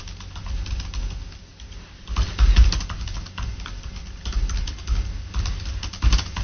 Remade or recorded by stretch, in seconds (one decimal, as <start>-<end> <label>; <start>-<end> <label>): 0.0-6.4 recorded